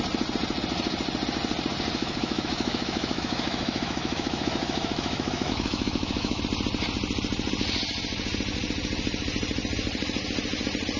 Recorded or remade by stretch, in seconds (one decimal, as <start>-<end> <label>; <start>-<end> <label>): 0.0-2.0 recorded; 2.0-6.4 remade; 6.4-11.0 recorded